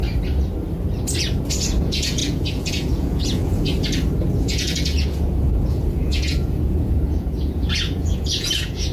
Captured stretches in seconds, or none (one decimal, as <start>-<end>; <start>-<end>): 0.0-1.8; 3.7-4.4